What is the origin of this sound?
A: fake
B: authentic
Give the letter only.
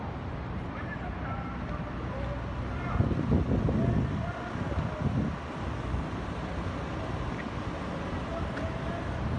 B